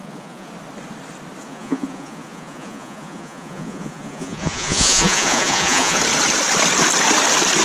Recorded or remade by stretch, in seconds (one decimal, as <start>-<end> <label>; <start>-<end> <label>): 0.0-0.5 remade; 0.5-1.4 recorded; 1.4-6.0 remade; 6.0-7.6 recorded